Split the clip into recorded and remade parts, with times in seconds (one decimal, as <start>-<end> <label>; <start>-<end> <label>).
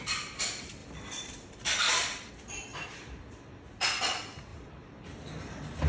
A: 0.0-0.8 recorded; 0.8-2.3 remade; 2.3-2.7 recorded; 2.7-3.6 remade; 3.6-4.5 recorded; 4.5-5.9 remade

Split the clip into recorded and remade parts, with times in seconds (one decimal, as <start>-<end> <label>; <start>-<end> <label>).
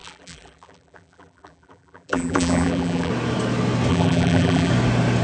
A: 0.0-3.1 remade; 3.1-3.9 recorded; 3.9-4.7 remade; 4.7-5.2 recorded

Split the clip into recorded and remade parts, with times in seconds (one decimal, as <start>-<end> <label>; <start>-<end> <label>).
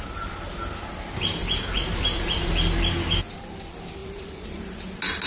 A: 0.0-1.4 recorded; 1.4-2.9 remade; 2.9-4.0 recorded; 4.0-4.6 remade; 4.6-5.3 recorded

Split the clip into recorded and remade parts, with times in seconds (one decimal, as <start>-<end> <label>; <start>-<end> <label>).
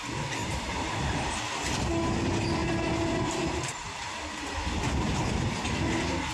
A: 0.0-0.4 recorded; 0.4-1.3 remade; 1.3-2.6 recorded; 2.6-4.6 remade; 4.6-6.3 recorded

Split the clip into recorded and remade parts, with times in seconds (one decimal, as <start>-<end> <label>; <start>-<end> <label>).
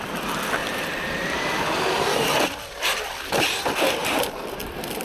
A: 0.0-0.6 recorded; 0.6-3.4 remade; 3.4-4.0 recorded; 4.0-5.0 remade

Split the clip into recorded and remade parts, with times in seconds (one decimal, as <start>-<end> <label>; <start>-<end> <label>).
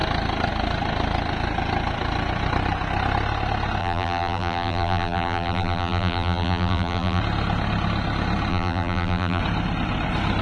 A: 0.0-3.8 recorded; 3.8-7.2 remade; 7.2-8.5 recorded; 8.5-9.4 remade; 9.4-10.4 recorded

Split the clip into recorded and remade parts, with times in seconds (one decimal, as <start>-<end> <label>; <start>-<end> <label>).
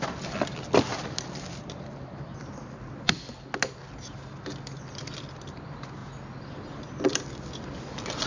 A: 0.0-0.9 recorded; 0.9-3.4 remade; 3.4-8.3 recorded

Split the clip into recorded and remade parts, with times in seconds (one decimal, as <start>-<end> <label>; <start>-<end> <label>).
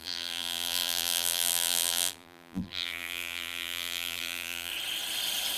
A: 0.0-4.7 remade; 4.7-5.6 recorded